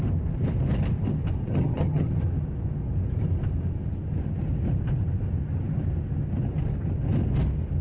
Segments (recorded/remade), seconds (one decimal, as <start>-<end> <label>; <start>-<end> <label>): 0.0-1.5 recorded; 1.5-2.1 remade; 2.1-7.8 recorded